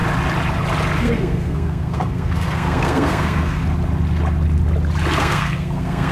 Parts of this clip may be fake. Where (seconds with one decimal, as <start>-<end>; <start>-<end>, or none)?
1.0-3.6; 5.2-6.1